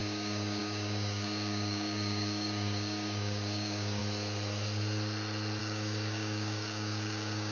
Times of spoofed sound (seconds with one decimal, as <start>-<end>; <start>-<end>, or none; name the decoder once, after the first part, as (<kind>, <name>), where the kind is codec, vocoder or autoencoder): 0.0-4.0 (codec, DAC); 5.6-7.5